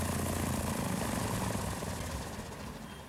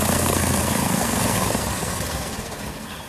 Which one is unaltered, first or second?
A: first